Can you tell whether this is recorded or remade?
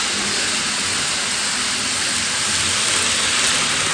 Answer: recorded